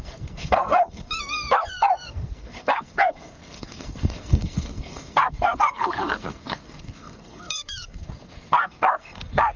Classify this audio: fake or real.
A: fake